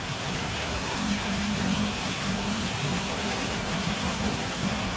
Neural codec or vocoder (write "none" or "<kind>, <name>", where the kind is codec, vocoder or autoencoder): codec, SNAC